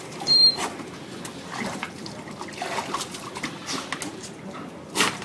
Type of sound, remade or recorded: recorded